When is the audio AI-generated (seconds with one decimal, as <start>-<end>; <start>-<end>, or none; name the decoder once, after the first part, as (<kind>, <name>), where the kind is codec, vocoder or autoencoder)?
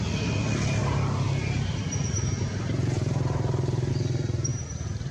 0.8-3.9 (vocoder, BigVGAN v2); 4.5-5.1